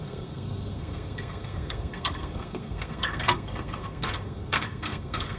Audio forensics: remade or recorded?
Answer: remade